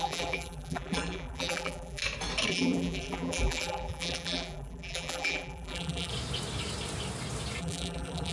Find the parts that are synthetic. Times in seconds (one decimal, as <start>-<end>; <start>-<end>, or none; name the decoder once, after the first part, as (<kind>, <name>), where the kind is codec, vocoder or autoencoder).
0.0-2.0 (vocoder, BigVGAN v2); 2.5-6.1; 7.6-8.3